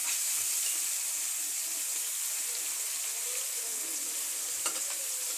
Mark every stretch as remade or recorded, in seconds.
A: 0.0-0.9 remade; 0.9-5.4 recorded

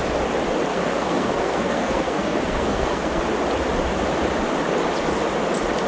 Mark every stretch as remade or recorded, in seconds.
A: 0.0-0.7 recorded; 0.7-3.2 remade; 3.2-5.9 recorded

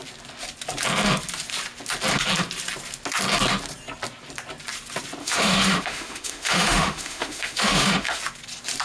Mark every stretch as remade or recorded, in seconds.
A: 0.0-5.2 recorded; 5.2-8.2 remade; 8.2-8.8 recorded

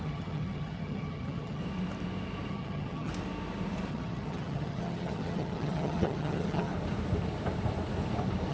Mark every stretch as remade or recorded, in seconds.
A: 0.0-1.6 remade; 1.6-2.5 recorded; 2.5-3.1 remade; 3.1-3.9 recorded; 3.9-6.7 remade; 6.7-8.5 recorded

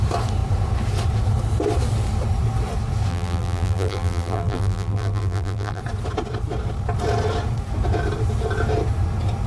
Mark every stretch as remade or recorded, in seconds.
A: 0.0-3.1 recorded; 3.1-5.8 remade; 5.8-9.5 recorded

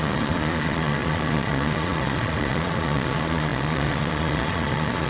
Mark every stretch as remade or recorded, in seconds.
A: 0.0-5.1 remade

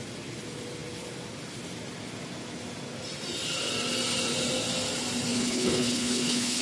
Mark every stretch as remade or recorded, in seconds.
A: 0.0-5.3 recorded; 5.3-6.6 remade